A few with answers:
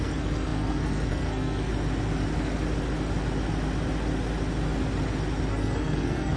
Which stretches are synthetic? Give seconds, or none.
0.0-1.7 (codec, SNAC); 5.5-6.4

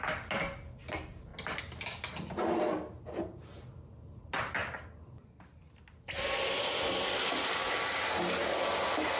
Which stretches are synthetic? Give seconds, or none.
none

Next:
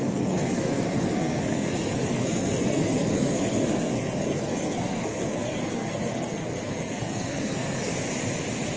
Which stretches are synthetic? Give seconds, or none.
0.0-7.9 (codec, SNAC)

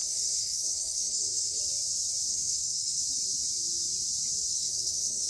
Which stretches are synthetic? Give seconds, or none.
0.0-1.6 (codec, SNAC); 2.3-3.0; 4.5-5.3

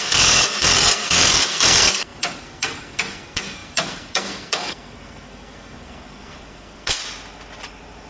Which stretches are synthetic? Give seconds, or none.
0.0-7.0 (codec, SNAC)

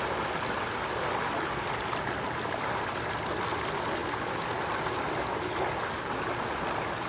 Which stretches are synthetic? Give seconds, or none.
none

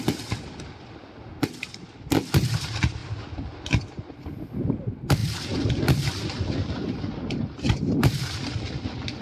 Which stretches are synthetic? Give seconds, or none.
none

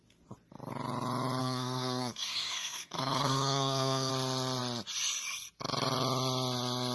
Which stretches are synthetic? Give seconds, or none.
1.4-4.1 (codec, SNAC)